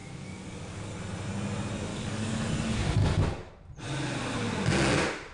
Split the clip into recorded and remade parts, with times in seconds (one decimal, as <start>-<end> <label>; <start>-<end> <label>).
0.0-1.0 remade; 1.0-1.9 recorded; 1.9-2.5 remade; 2.5-3.0 recorded; 3.0-3.5 remade; 3.5-5.3 recorded